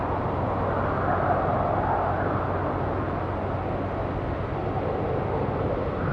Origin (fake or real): real